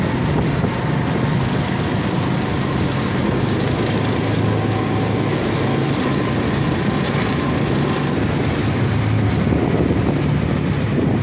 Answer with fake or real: real